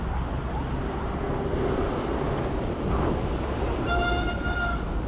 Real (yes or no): yes